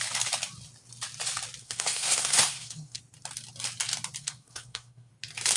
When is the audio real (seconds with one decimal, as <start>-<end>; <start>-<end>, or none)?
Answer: 0.0-1.6; 3.0-4.2; 5.1-5.6